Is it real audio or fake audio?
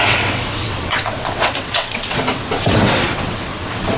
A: fake